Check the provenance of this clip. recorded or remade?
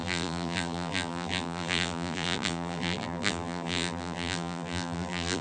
remade